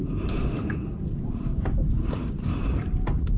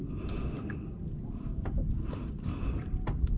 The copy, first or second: first